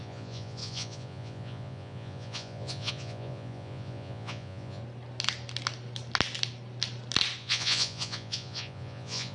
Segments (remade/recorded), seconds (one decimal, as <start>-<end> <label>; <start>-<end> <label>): 0.0-4.8 remade; 4.8-7.4 recorded; 7.4-9.3 remade